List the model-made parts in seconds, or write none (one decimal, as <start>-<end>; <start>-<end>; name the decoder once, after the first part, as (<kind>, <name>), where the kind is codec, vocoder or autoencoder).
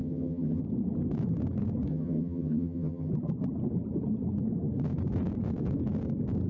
0.0-0.6 (vocoder, HiFi-GAN); 1.9-3.1